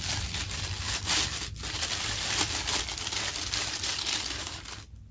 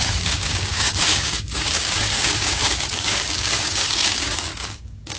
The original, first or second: first